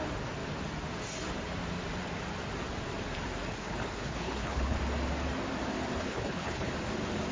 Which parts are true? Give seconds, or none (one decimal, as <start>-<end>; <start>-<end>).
0.0-3.5; 4.8-6.0; 6.7-7.3